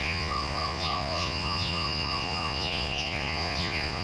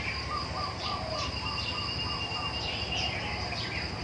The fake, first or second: first